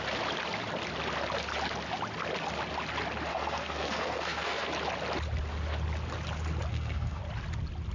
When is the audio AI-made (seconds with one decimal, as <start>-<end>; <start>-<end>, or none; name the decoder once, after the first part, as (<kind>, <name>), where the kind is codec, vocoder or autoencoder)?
3.3-4.7 (codec, SNAC); 6.7-7.2